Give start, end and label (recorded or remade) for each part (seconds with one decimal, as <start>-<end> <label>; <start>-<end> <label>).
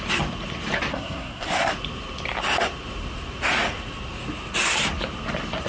0.0-0.9 recorded; 0.9-1.7 remade; 1.7-5.7 recorded